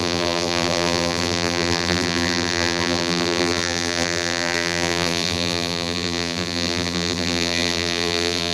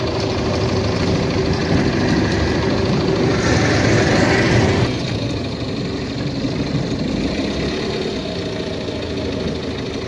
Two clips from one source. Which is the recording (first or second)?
second